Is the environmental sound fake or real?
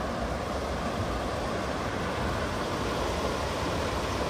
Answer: real